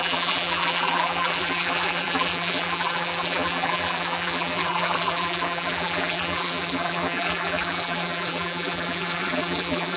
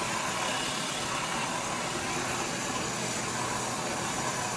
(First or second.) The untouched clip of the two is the second